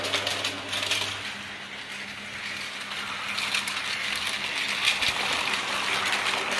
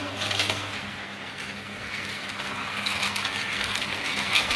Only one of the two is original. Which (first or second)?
first